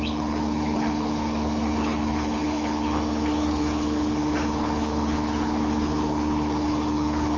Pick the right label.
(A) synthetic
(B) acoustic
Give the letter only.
A